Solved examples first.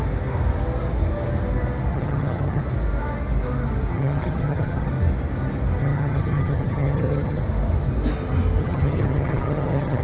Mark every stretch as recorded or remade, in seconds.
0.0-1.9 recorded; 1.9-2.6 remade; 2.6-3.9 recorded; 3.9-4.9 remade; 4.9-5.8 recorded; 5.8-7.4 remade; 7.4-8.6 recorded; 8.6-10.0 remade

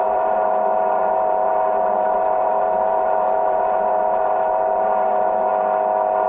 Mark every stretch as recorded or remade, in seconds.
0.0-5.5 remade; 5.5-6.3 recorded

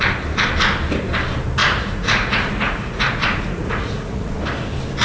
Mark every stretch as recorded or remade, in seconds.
0.0-1.6 recorded; 1.6-4.3 remade; 4.3-5.0 recorded